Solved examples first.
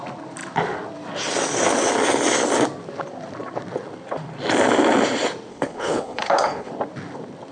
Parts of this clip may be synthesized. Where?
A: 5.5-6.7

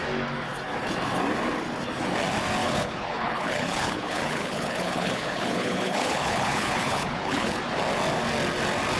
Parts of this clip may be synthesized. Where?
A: 2.6-7.6

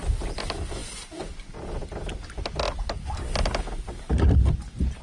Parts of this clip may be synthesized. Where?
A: none

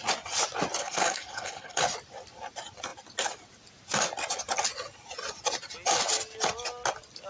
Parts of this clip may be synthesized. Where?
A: 0.8-1.8

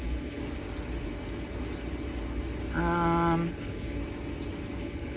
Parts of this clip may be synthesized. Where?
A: 0.0-0.4; 3.5-4.0; 4.8-5.2

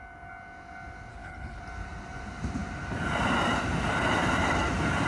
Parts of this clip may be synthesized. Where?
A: 1.1-1.6

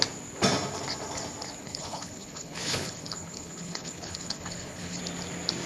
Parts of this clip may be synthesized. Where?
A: 1.6-5.0